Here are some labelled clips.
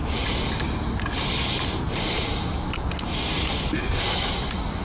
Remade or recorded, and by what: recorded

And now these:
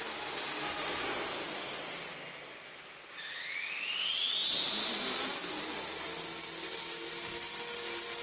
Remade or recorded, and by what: recorded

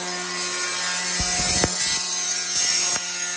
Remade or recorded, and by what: recorded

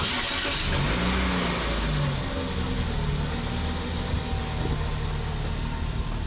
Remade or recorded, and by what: recorded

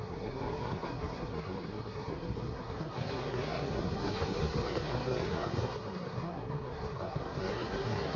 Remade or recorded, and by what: remade, codec, SNAC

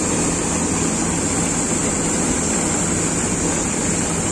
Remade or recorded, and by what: recorded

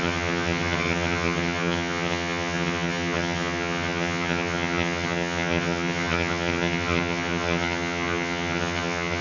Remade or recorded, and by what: remade, vocoder, HiFi-GAN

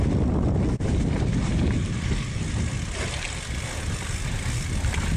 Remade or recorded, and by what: recorded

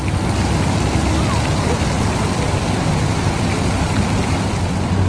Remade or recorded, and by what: recorded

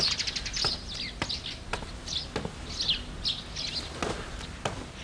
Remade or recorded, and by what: recorded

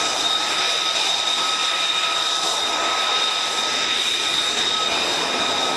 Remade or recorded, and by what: recorded